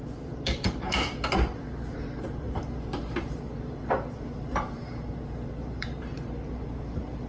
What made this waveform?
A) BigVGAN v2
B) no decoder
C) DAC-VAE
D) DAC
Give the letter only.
A